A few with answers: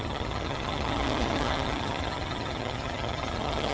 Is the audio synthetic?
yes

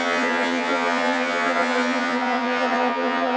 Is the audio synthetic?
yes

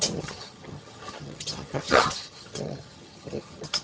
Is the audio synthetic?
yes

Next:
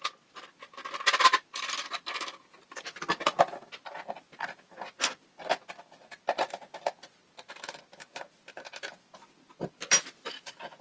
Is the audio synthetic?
no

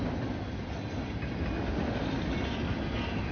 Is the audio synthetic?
no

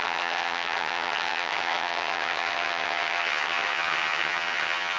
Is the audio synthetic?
yes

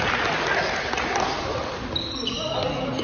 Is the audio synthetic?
no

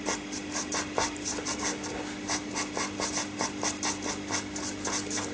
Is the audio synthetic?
no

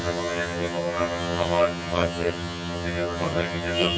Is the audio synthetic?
yes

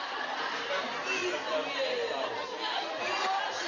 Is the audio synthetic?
no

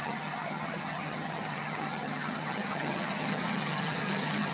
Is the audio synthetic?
yes